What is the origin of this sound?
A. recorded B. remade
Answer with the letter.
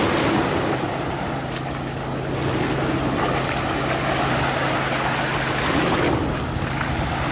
A